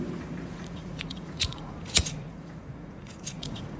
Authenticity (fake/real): fake